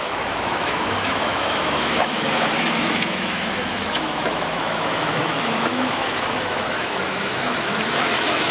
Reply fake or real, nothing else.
fake